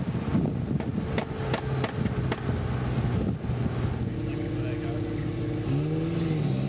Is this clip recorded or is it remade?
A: recorded